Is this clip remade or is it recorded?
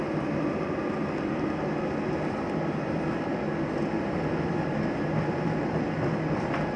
recorded